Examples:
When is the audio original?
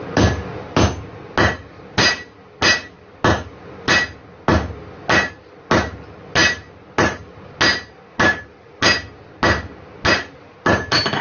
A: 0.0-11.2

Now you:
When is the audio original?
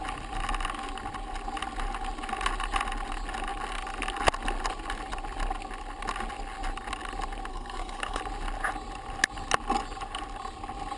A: 0.0-7.5; 8.2-11.0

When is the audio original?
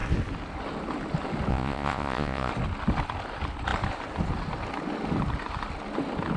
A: 0.0-1.5; 2.5-6.4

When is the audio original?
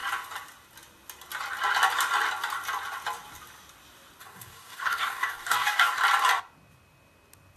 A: 0.0-4.2; 6.0-7.6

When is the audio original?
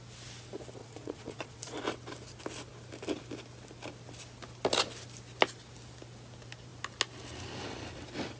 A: 0.0-0.8; 1.8-8.4